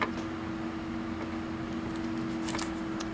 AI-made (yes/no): no